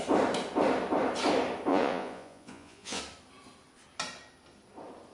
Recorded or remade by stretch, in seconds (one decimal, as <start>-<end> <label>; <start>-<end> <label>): 0.0-1.7 recorded; 1.7-3.0 remade; 3.0-5.1 recorded